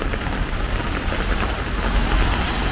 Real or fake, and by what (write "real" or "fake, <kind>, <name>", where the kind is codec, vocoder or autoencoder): real